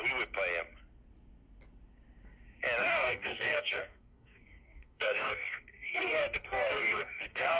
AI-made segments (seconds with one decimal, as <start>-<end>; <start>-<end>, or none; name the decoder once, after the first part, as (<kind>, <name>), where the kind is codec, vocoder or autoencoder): 2.8-7.6 (codec, DAC)